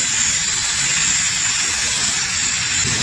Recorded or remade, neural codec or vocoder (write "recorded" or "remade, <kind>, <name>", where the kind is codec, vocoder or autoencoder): recorded